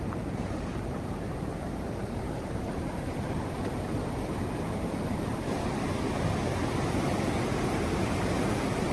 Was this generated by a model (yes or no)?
yes